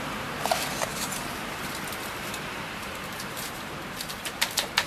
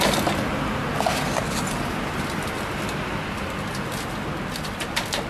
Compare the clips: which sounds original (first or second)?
second